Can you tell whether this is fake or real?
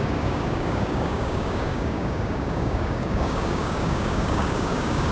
fake